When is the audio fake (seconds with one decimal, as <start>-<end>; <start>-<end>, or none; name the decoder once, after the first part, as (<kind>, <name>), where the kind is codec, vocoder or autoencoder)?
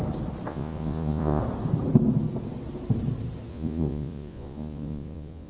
0.5-1.4 (vocoder, Vocos); 3.5-5.5